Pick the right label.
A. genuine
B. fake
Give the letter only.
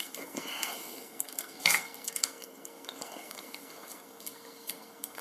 B